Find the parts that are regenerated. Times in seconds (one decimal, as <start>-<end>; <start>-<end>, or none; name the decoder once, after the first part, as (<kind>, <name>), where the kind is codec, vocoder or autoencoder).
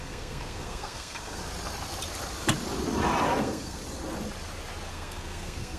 0.0-1.4 (codec, SNAC); 3.4-3.8; 4.9-5.8